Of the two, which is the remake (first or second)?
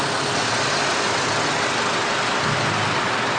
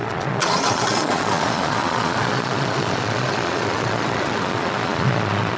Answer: second